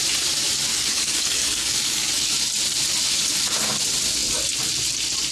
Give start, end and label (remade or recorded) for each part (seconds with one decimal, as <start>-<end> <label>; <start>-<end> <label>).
0.0-0.7 recorded; 0.7-2.3 remade; 2.3-5.3 recorded